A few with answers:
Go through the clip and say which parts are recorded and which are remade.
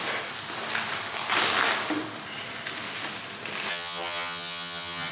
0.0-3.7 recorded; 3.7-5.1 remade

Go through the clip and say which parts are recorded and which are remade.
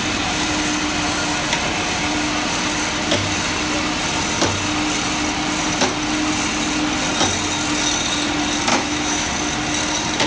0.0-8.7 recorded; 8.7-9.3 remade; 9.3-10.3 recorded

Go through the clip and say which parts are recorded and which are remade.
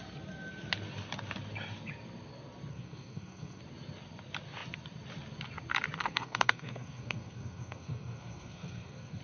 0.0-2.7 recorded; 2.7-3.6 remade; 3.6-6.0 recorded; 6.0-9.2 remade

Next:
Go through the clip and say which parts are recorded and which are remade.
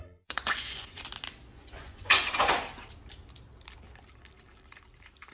0.0-1.0 remade; 1.0-1.5 recorded; 1.5-2.5 remade; 2.5-5.3 recorded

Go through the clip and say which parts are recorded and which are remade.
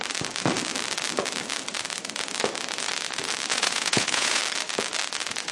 0.0-3.5 recorded; 3.5-4.4 remade; 4.4-5.5 recorded